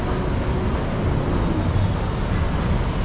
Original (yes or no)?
yes